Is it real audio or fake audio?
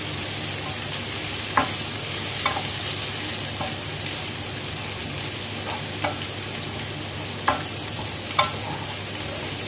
real